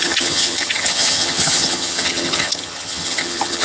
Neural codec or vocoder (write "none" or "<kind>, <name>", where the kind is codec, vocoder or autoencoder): vocoder, HiFi-GAN